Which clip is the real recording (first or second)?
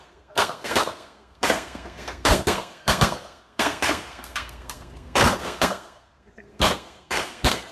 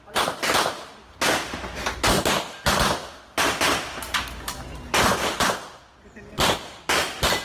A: second